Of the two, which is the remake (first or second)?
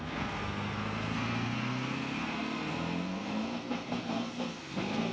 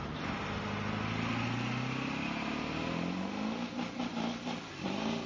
first